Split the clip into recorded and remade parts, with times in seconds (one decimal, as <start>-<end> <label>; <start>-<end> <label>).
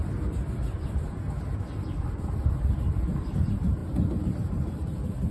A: 0.0-3.2 recorded; 3.2-3.8 remade; 3.8-4.3 recorded; 4.3-5.3 remade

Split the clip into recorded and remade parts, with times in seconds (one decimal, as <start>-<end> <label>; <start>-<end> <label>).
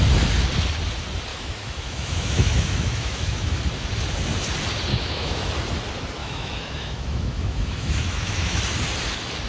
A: 0.0-1.3 recorded; 1.3-3.6 remade; 3.6-4.9 recorded; 4.9-5.5 remade; 5.5-6.2 recorded; 6.2-8.6 remade; 8.6-9.5 recorded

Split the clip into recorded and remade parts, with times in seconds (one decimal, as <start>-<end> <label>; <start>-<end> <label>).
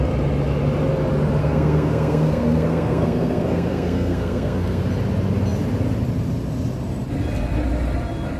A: 0.0-1.4 recorded; 1.4-4.8 remade; 4.8-8.4 recorded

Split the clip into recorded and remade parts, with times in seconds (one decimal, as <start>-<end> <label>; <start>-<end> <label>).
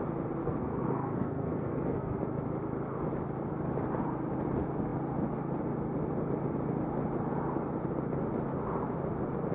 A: 0.0-0.4 recorded; 0.4-2.2 remade; 2.2-9.5 recorded